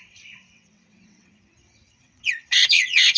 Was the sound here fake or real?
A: fake